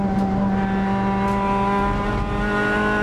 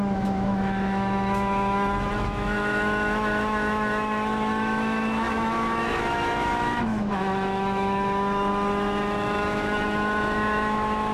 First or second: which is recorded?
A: first